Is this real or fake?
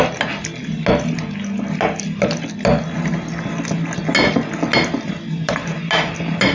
real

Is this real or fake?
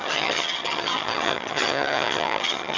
fake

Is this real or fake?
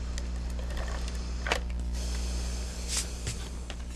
real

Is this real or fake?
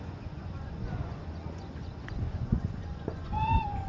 fake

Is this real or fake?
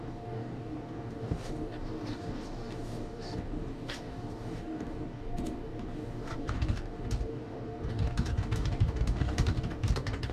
fake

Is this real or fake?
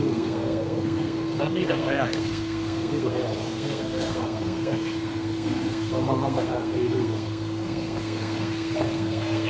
fake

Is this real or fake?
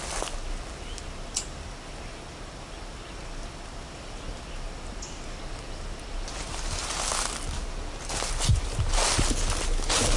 real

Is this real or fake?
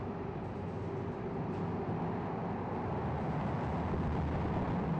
real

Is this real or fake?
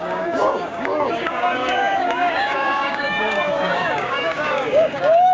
fake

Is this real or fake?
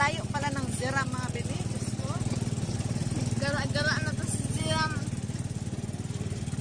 real